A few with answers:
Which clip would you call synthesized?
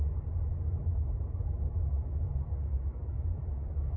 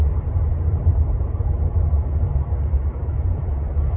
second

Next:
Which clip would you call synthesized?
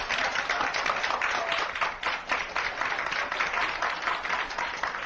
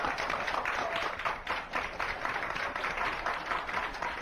second